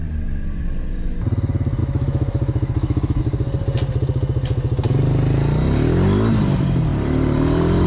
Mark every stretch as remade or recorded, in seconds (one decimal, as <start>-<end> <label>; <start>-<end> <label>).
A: 0.0-1.8 recorded; 1.8-3.2 remade; 3.2-7.9 recorded